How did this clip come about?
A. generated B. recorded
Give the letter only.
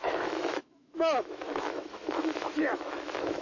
A